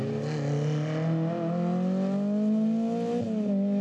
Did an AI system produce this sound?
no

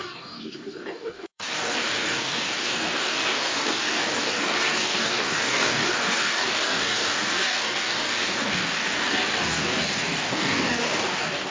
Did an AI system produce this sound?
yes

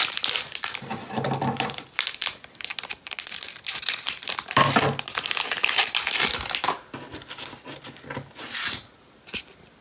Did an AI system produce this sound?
no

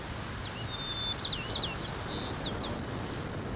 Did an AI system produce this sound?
no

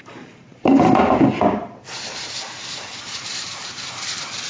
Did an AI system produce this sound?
yes